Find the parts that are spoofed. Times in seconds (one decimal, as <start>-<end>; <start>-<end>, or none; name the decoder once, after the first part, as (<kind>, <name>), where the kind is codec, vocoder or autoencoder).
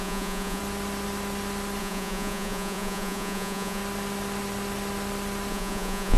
0.0-0.6 (vocoder, Vocos); 1.8-3.8; 5.5-6.2